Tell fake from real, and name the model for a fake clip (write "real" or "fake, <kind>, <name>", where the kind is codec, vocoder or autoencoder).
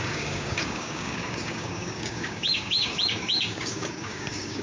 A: fake, codec, DAC